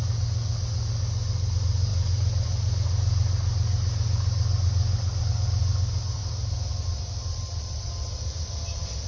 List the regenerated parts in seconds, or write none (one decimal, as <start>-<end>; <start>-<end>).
none